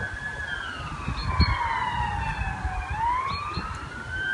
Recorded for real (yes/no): yes